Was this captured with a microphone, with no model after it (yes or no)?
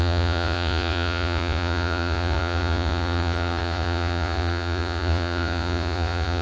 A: no